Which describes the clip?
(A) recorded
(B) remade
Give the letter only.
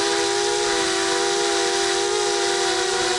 A